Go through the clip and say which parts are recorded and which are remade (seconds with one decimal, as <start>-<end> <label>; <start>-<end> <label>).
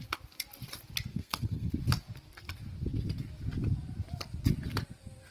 0.0-1.1 recorded; 1.1-1.7 remade; 1.7-5.3 recorded